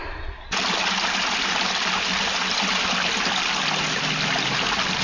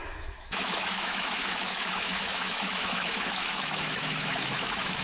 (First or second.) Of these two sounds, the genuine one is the first